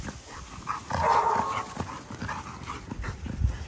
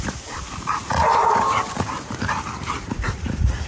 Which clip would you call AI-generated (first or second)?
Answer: second